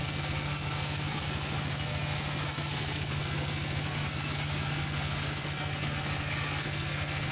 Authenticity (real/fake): fake